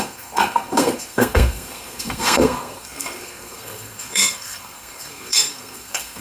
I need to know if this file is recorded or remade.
remade